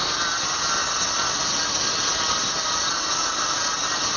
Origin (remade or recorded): recorded